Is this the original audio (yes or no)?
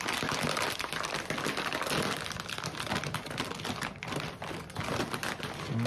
yes